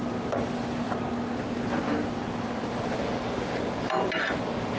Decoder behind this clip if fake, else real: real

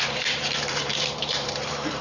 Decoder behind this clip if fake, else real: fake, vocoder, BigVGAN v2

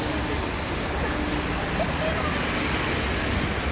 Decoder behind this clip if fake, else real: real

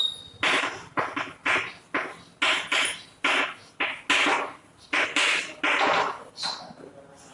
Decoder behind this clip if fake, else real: real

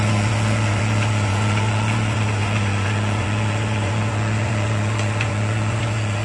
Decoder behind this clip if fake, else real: fake, vocoder, Vocos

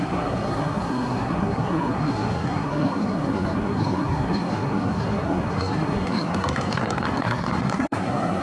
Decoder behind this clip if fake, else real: fake, codec, SNAC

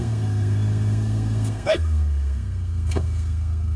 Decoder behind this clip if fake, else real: fake, codec, SNAC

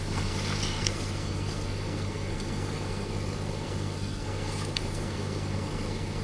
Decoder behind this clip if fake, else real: fake, codec, SNAC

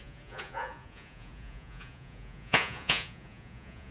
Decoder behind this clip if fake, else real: fake, vocoder, Vocos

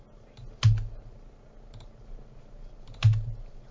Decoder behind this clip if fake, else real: real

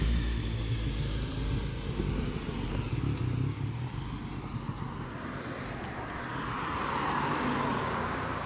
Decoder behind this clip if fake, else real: real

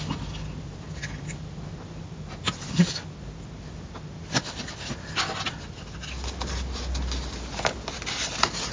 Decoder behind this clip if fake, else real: real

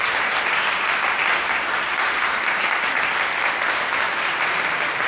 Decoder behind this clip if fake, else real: real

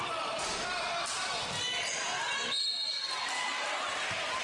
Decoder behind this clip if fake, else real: real